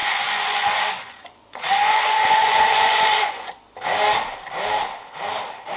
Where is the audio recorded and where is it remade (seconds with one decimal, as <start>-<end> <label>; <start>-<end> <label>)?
0.0-3.5 remade; 3.5-5.8 recorded